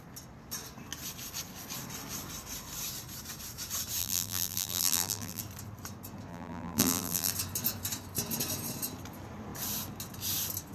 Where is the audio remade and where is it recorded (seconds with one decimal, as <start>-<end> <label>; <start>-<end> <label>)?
0.0-4.0 recorded; 4.0-5.4 remade; 5.4-6.3 recorded; 6.3-7.3 remade; 7.3-10.7 recorded